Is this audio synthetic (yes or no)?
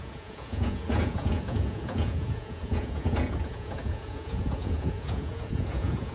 yes